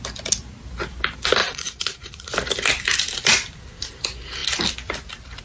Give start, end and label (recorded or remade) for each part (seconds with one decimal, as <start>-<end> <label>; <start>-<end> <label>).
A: 0.0-1.4 recorded; 1.4-2.3 remade; 2.3-5.4 recorded